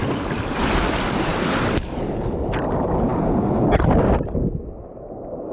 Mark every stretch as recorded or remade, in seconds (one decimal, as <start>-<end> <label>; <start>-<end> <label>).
0.0-5.5 recorded